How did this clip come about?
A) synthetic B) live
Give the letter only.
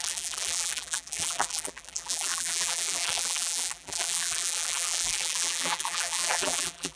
A